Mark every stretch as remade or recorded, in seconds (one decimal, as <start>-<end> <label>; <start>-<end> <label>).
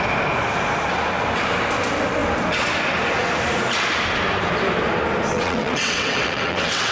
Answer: 0.0-5.3 recorded; 5.3-6.9 remade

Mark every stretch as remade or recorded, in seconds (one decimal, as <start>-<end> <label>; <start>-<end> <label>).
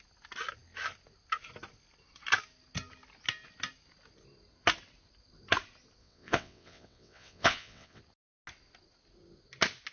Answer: 0.0-6.0 recorded; 6.0-8.0 remade; 8.0-9.9 recorded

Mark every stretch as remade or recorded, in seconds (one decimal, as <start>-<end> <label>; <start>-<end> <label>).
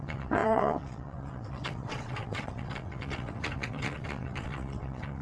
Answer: 0.0-5.2 remade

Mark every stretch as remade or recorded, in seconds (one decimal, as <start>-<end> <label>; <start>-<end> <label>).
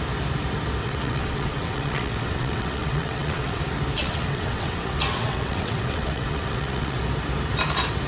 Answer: 0.0-0.8 recorded; 0.8-3.6 remade; 3.6-4.0 recorded; 4.0-7.0 remade; 7.0-8.1 recorded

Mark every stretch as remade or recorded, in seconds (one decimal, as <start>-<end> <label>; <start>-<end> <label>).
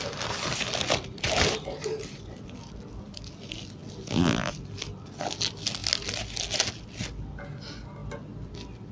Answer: 0.0-8.9 recorded